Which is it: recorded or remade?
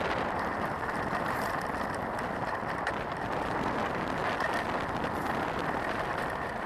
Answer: recorded